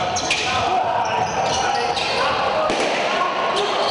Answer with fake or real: real